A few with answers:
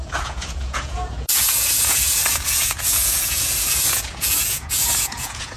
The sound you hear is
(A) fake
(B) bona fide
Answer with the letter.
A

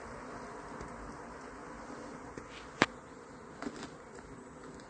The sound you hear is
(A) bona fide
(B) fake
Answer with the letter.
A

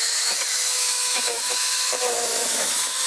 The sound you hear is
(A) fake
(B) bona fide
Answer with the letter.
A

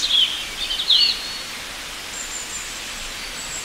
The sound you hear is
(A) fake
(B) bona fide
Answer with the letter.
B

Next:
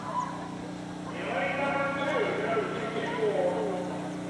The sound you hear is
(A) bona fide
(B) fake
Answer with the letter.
A